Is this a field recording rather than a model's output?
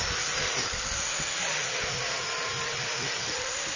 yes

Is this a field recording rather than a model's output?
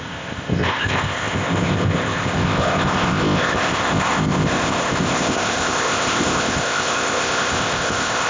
no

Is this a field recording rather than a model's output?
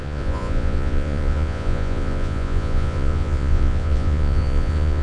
no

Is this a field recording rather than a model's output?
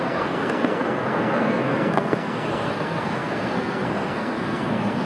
no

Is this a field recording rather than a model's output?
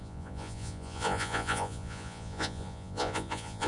no